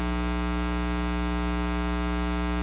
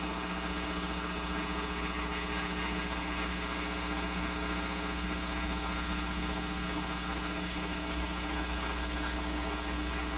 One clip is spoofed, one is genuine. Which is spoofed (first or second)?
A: second